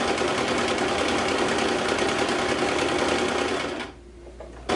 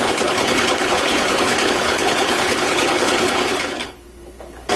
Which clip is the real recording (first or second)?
first